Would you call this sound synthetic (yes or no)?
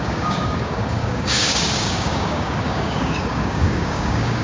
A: yes